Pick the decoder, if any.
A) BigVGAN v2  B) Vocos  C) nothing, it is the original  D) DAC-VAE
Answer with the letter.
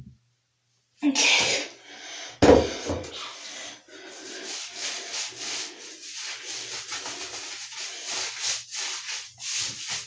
C